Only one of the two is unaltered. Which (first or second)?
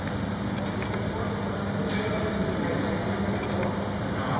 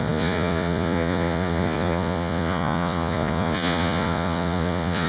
first